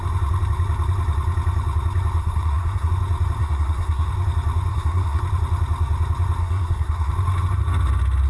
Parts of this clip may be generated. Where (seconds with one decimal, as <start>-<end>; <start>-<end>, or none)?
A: 2.2-2.9; 3.4-4.1; 4.7-5.2; 6.4-7.1